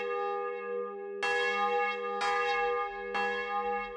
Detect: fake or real real